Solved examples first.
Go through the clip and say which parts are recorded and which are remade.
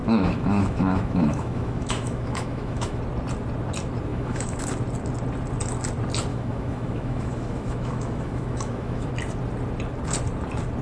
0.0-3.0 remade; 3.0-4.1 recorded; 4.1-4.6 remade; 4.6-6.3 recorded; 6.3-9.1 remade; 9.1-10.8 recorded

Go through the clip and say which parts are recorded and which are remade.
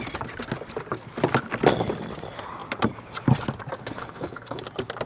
0.0-3.8 recorded; 3.8-4.6 remade; 4.6-5.1 recorded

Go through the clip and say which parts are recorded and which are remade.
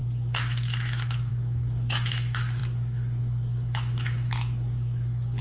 0.0-5.4 remade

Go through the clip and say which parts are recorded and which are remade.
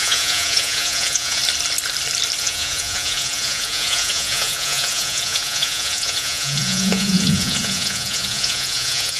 0.0-1.4 remade; 1.4-2.4 recorded; 2.4-9.2 remade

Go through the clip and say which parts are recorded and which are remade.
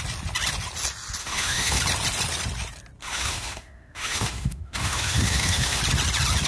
0.0-1.2 recorded; 1.2-1.8 remade; 1.8-3.0 recorded; 3.0-5.8 remade; 5.8-6.5 recorded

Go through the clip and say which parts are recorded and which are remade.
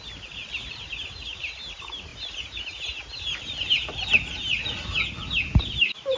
0.0-6.2 recorded